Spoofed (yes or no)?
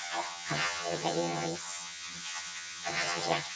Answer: yes